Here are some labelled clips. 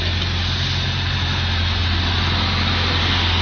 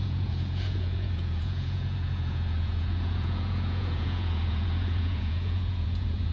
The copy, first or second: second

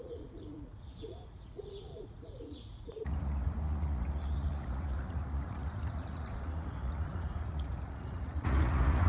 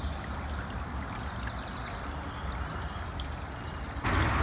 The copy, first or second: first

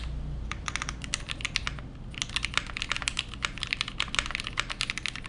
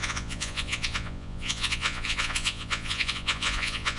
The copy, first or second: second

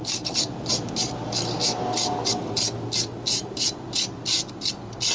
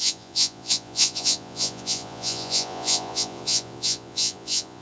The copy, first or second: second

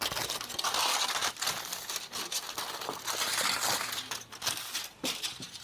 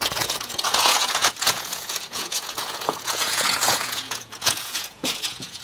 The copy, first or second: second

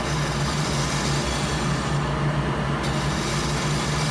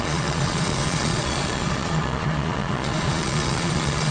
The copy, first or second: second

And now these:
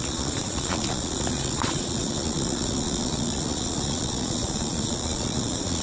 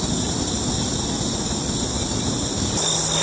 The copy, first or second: first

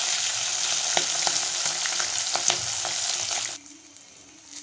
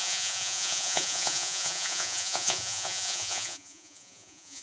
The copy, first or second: second